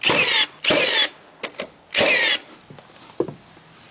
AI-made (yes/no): no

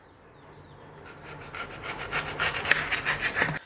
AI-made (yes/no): no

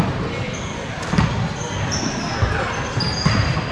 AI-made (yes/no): no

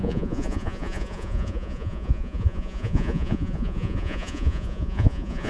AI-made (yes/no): yes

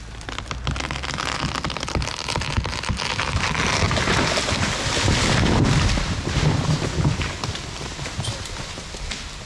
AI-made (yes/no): no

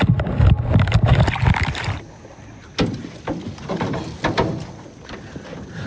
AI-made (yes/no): no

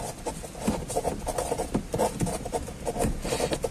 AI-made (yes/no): no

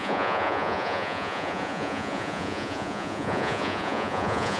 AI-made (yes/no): yes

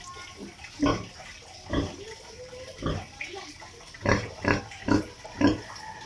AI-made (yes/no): no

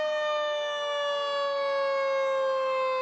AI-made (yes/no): no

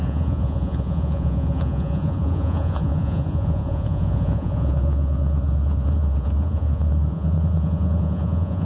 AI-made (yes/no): yes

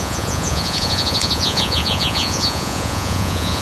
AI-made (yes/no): yes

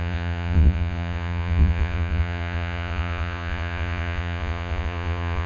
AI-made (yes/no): yes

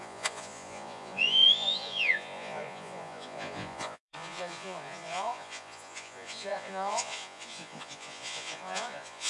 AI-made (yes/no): yes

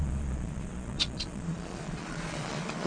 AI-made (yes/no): yes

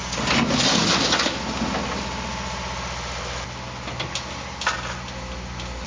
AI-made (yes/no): no